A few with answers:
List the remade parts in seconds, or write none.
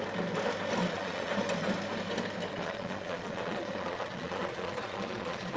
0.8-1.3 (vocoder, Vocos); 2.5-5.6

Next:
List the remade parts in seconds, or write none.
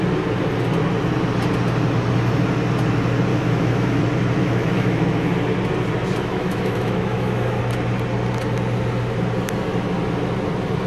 3.3-4.0 (autoencoder, DAC-VAE); 4.4-5.3; 6.2-7.6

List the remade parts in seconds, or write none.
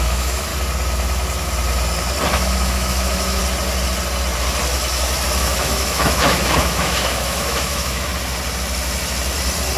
0.0-0.5 (autoencoder, DAC-VAE); 2.3-3.4; 5.4-8.1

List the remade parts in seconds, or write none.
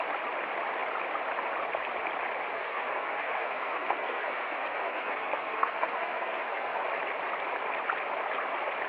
2.5-6.8 (codec, SNAC)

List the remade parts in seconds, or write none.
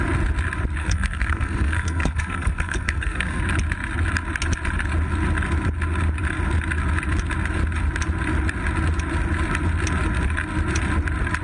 0.8-3.4 (codec, SNAC)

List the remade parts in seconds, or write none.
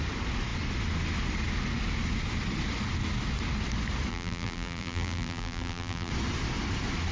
4.1-6.1 (vocoder, BigVGAN v2)